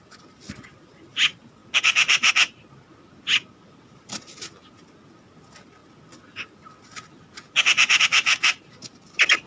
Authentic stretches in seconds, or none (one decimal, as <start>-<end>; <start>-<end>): 0.0-9.5